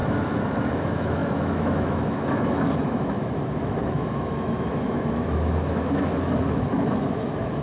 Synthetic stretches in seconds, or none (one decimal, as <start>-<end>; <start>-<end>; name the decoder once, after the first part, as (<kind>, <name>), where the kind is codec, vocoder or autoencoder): 0.0-7.6 (autoencoder, DAC-VAE)